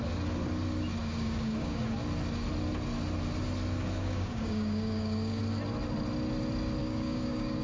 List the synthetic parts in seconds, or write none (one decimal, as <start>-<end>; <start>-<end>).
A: 1.0-1.9; 4.0-5.4; 6.8-7.6